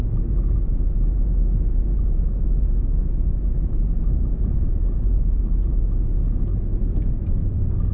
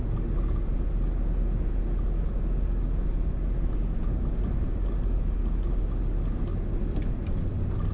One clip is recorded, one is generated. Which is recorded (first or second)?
second